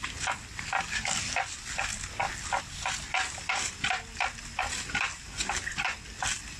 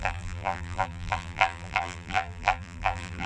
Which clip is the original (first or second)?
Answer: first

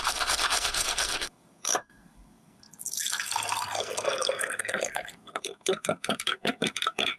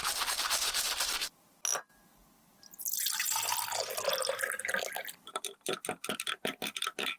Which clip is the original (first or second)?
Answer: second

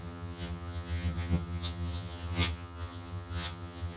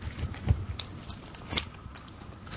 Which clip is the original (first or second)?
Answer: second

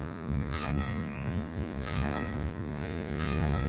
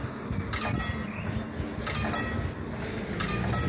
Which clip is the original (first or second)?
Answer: second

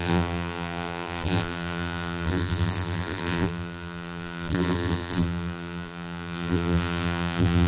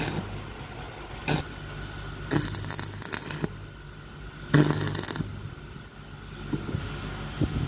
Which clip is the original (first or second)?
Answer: second